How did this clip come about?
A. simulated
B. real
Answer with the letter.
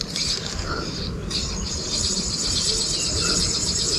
B